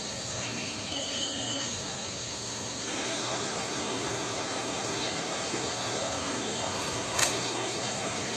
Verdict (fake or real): fake